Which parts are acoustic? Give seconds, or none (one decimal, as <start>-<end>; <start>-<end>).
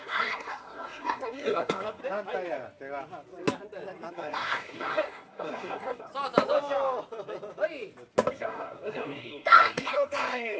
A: 2.0-4.1; 6.1-8.3